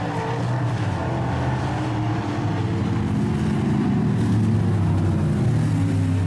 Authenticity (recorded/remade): recorded